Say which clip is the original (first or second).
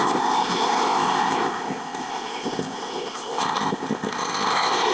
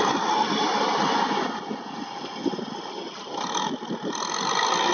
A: second